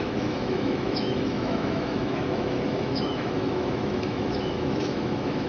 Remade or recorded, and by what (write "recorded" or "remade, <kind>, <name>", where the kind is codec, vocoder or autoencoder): remade, autoencoder, DAC-VAE